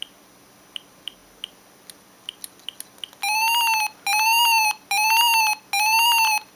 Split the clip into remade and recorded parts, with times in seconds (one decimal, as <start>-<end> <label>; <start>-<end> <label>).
0.0-6.6 recorded